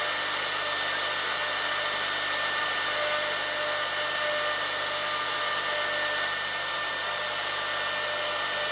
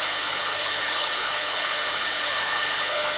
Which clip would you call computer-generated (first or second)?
second